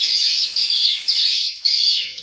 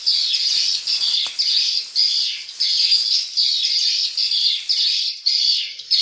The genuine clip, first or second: second